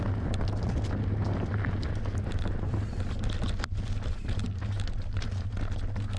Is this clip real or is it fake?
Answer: real